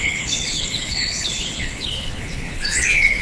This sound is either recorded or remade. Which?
remade